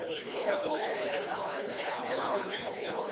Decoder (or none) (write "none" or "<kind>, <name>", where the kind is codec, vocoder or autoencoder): codec, HILCodec